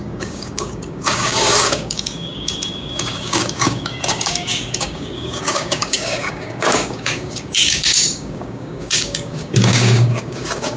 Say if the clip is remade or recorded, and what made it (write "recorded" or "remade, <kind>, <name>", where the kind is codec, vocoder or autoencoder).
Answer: remade, codec, DAC